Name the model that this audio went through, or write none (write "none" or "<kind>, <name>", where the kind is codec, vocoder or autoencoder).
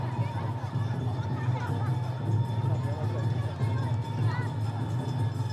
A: none